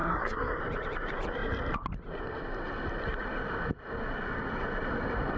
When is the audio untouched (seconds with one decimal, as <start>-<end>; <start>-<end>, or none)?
0.6-5.4